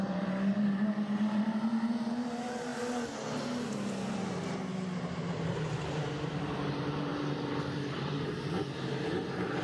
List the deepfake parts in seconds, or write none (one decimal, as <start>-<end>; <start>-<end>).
0.0-2.7; 5.3-7.1; 8.0-9.6